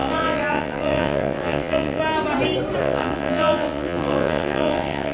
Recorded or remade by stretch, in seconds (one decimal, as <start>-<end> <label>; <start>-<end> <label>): 0.0-2.0 remade; 2.0-2.8 recorded; 2.8-5.1 remade